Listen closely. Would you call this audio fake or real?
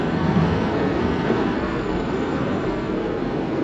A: fake